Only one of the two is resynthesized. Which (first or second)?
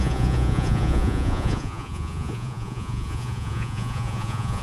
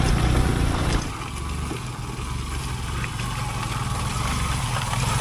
first